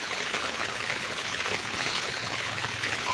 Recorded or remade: remade